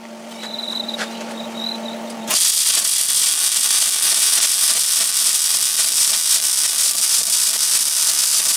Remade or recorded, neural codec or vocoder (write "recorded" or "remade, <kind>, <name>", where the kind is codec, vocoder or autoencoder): remade, vocoder, BigVGAN v2